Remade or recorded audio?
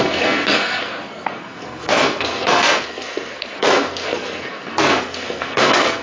remade